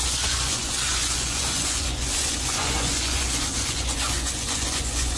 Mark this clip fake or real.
fake